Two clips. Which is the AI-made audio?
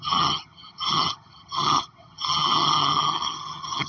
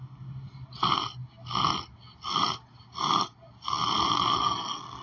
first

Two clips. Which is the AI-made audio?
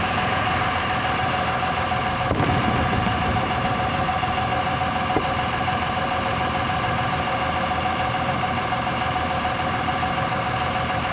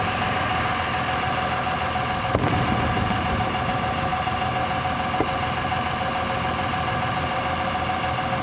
first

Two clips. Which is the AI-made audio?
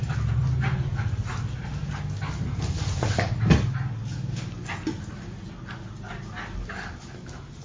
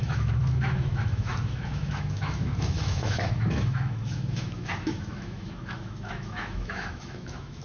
second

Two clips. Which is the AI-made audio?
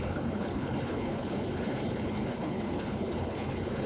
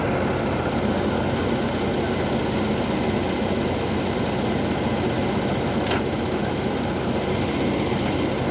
first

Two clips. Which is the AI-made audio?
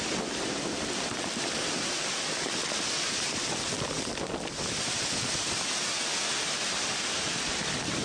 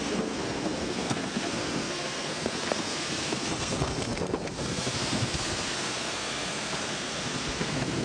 second